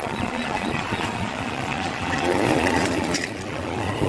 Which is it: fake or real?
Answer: fake